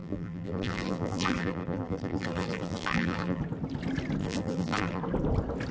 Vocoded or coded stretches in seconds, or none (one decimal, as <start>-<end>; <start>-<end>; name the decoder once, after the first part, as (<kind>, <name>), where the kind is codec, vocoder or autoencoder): 0.0-3.4 (vocoder, BigVGAN v2); 4.2-5.0